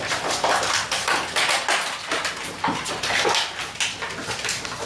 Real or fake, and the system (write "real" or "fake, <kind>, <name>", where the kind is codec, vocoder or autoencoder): real